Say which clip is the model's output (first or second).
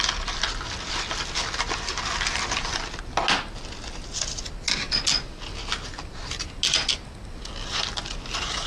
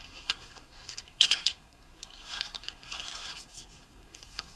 second